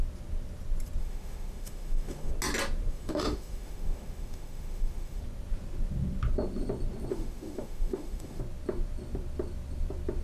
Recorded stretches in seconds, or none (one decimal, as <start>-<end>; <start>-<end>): 0.0-1.0; 2.3-2.9; 5.2-7.1; 8.4-10.2

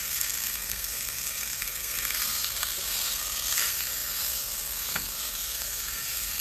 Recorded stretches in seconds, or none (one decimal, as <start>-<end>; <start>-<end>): none

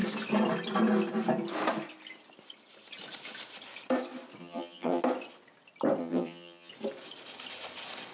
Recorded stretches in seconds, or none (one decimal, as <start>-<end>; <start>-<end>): 0.0-4.4; 5.0-6.0; 6.7-8.1

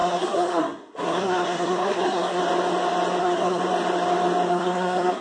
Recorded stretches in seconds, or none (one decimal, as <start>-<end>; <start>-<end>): 2.4-3.2; 3.6-4.5

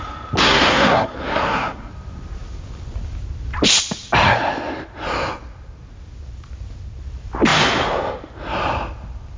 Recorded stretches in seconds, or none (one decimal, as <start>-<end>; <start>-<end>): 0.0-0.4; 1.9-9.4

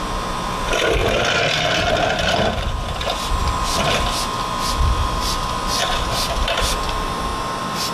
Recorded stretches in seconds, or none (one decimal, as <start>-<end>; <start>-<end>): 0.0-7.9